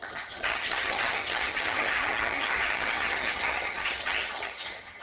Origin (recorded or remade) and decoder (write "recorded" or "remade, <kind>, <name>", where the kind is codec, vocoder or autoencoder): remade, vocoder, HiFi-GAN